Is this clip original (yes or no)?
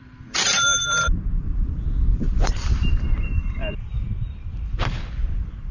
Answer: no